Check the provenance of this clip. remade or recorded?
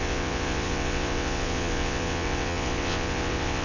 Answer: remade